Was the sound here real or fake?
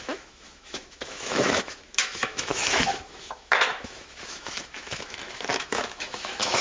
fake